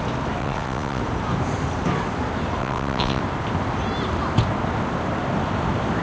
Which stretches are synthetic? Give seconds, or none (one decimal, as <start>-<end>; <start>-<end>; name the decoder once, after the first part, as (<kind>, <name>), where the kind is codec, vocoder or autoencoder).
0.4-1.0 (vocoder, WaveNeXt); 2.6-3.2